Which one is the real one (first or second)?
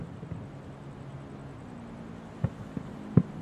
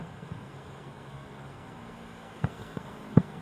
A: first